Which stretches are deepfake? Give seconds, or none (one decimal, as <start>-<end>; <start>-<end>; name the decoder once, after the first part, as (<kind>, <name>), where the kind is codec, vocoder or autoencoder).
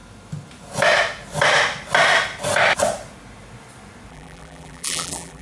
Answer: 4.1-5.4 (vocoder, BigVGAN v2)